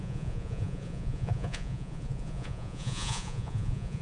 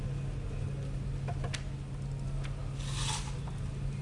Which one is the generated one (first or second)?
first